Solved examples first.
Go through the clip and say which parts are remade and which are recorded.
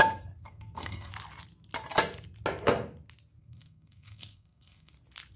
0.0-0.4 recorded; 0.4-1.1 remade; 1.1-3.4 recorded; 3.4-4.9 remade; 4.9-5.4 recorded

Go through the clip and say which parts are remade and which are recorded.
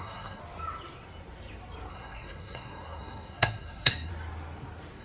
0.0-0.4 remade; 0.4-1.9 recorded; 1.9-4.1 remade; 4.1-5.0 recorded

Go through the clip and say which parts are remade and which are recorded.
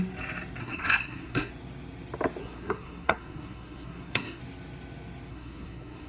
0.0-0.6 recorded; 0.6-1.5 remade; 1.5-2.4 recorded; 2.4-4.4 remade; 4.4-5.3 recorded; 5.3-6.1 remade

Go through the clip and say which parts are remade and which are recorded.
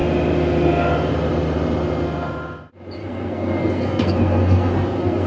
0.0-3.0 recorded; 3.0-5.3 remade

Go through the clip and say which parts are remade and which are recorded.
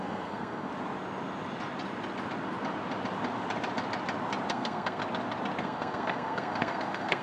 0.0-0.7 remade; 0.7-4.5 recorded; 4.5-5.0 remade; 5.0-5.6 recorded; 5.6-7.2 remade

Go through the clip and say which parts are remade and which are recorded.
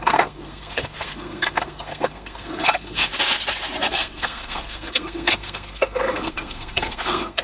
0.0-3.1 remade; 3.1-3.9 recorded; 3.9-7.4 remade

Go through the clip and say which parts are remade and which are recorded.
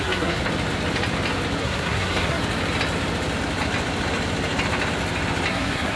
0.0-0.4 remade; 0.4-1.6 recorded; 1.6-2.4 remade; 2.4-5.5 recorded; 5.5-6.0 remade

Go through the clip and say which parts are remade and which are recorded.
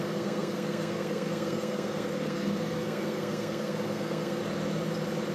0.0-4.4 remade; 4.4-5.3 recorded